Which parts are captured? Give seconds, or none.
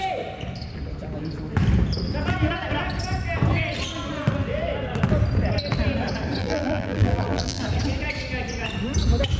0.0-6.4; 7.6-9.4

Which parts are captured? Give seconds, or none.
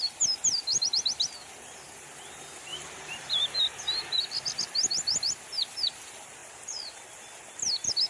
0.0-2.7; 3.6-8.1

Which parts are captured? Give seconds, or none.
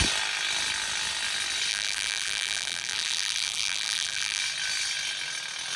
0.0-1.7; 4.4-5.8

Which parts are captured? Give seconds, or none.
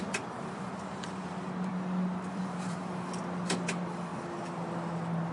1.7-2.3; 4.1-5.3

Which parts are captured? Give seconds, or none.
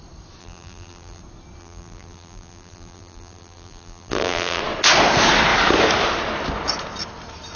0.0-0.4; 1.2-1.6; 4.6-7.6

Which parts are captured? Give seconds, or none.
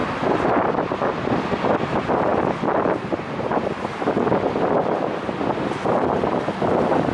1.1-7.1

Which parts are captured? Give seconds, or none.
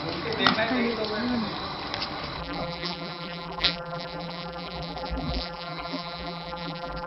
0.0-2.4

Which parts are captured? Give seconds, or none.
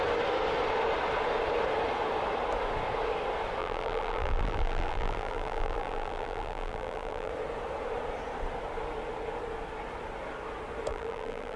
0.0-3.6; 7.3-10.9